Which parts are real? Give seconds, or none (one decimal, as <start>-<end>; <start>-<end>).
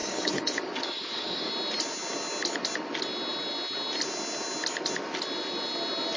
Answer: 1.5-6.2